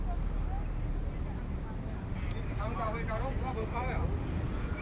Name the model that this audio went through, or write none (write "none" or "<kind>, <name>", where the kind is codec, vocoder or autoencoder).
none